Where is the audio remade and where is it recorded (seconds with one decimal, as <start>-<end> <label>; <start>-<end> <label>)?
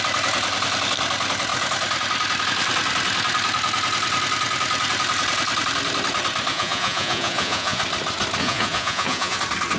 0.0-6.5 recorded; 6.5-7.8 remade; 7.8-8.4 recorded; 8.4-9.4 remade; 9.4-9.8 recorded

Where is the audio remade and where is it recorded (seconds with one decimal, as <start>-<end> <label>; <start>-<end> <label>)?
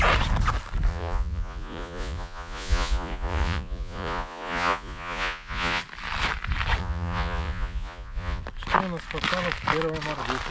0.0-0.9 recorded; 0.9-5.8 remade; 5.8-6.8 recorded; 6.8-8.4 remade; 8.4-10.5 recorded